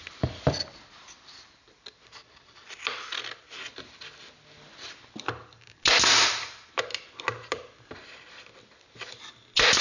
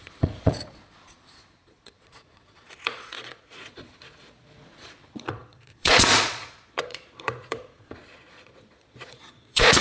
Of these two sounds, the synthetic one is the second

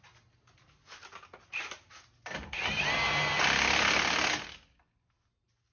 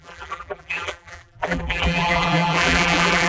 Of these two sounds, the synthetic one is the second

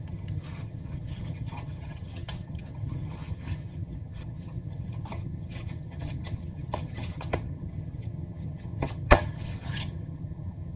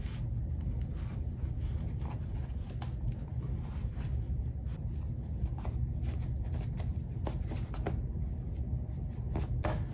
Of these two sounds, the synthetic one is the first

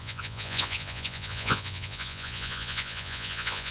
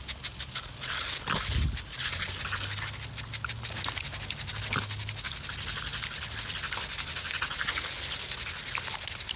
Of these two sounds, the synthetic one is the first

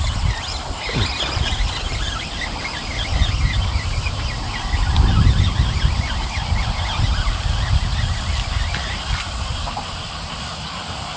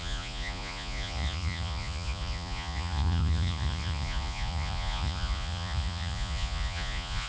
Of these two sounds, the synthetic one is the second